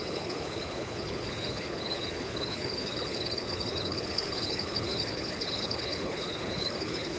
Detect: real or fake fake